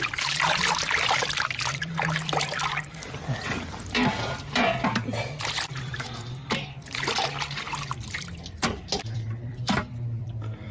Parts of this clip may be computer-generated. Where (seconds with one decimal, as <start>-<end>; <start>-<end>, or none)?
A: 0.0-5.1; 5.7-10.7